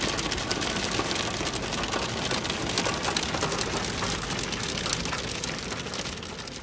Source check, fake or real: real